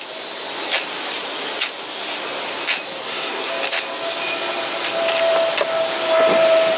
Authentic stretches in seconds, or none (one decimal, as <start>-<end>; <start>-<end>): 0.0-3.0; 3.5-6.8